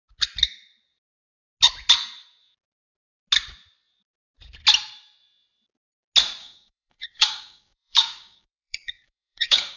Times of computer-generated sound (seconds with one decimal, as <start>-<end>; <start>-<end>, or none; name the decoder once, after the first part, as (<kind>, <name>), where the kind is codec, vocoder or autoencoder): 6.4-9.8 (codec, DAC)